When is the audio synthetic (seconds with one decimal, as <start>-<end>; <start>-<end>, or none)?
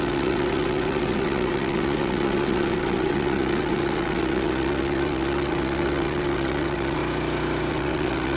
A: 0.0-7.0; 7.7-8.4